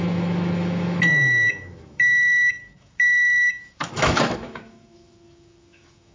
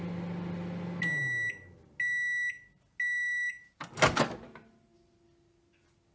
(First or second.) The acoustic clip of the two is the second